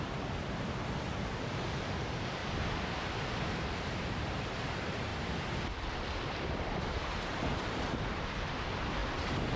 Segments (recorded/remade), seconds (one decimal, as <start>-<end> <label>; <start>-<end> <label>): 0.0-2.4 remade; 2.4-3.7 recorded; 3.7-5.1 remade; 5.1-7.1 recorded; 7.1-9.6 remade